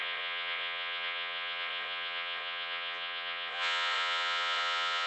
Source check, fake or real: fake